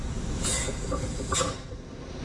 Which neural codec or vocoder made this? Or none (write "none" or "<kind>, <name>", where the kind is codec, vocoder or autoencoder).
none